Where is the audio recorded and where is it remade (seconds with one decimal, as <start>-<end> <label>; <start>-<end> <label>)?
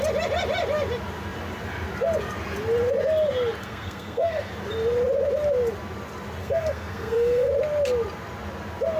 0.0-3.6 recorded; 3.6-4.5 remade; 4.5-6.4 recorded; 6.4-7.5 remade; 7.5-9.0 recorded